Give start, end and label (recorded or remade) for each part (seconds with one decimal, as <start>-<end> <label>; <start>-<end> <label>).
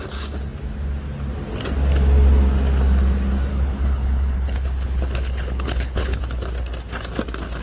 0.0-3.5 recorded; 3.5-6.2 remade; 6.2-7.6 recorded